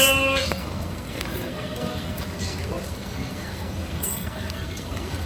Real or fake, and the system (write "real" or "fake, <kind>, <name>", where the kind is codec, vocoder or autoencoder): fake, codec, SNAC